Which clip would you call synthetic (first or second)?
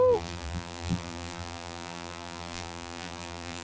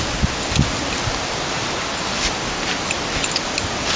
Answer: first